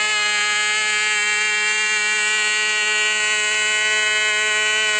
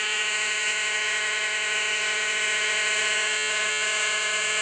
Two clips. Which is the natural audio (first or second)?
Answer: first